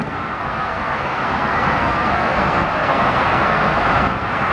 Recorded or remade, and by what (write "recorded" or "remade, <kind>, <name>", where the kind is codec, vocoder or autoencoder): remade, codec, SNAC